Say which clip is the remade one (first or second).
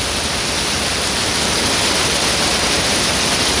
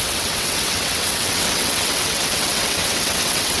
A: second